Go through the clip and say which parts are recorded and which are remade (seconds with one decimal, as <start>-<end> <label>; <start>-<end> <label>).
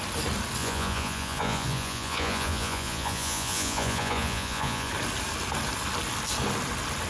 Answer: 0.0-0.6 recorded; 0.6-4.9 remade; 4.9-7.1 recorded